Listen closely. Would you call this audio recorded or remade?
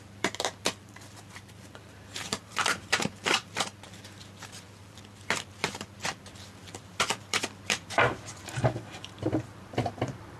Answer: remade